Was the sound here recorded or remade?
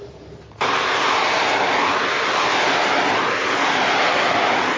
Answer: recorded